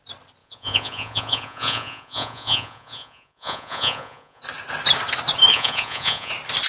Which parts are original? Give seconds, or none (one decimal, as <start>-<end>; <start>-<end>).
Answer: 0.0-0.4; 4.4-5.5; 6.3-6.7